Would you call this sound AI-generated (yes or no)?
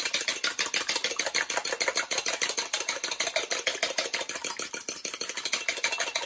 no